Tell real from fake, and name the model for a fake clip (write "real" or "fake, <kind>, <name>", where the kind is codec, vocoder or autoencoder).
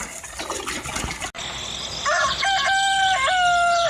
real